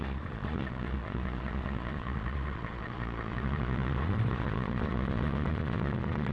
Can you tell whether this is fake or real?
fake